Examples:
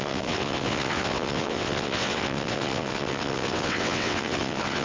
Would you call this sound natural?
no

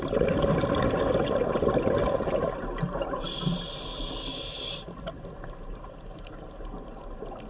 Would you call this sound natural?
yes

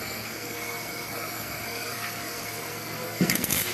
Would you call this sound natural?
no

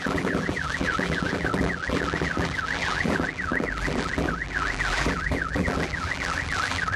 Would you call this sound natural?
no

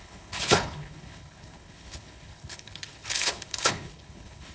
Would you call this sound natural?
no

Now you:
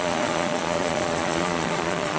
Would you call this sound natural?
no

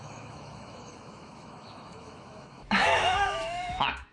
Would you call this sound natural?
no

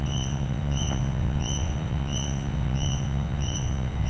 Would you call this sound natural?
no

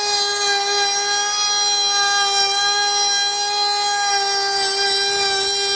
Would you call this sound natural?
yes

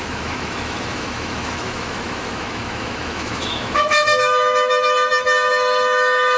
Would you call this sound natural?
no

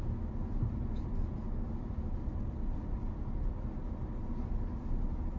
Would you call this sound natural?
yes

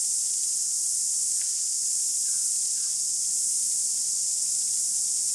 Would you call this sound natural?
yes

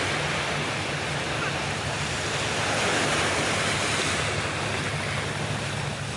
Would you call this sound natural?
yes